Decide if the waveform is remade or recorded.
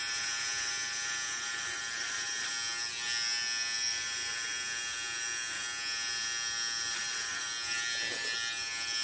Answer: recorded